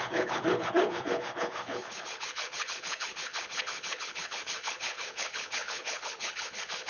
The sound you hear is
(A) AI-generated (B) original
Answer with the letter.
A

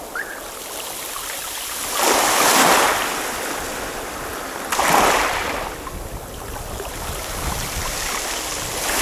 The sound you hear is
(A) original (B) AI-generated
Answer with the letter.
A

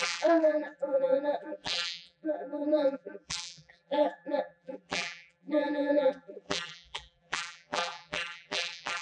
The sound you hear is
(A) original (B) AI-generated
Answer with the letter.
B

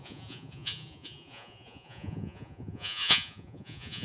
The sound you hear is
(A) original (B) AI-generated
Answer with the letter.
B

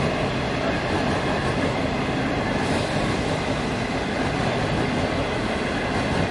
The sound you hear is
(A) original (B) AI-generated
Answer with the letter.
A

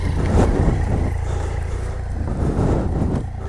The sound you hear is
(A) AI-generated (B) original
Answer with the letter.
B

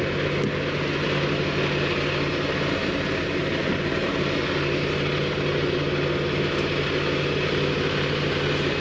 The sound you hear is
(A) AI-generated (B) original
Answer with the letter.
B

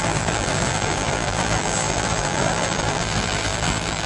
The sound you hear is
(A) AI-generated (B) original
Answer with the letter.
A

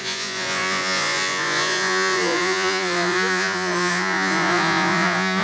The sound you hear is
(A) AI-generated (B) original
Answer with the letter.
A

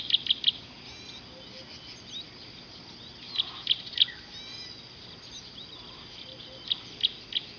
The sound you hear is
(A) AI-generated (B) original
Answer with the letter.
B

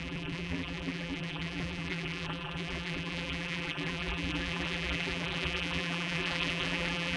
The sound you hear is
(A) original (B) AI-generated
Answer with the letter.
B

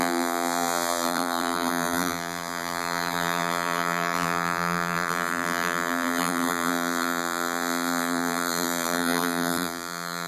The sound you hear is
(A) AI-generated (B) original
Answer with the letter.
A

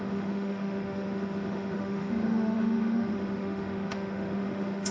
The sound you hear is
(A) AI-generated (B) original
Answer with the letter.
A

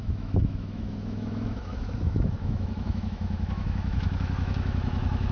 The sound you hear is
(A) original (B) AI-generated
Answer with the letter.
B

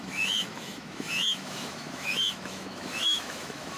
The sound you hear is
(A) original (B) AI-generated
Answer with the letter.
B